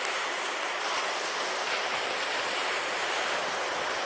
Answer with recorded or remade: recorded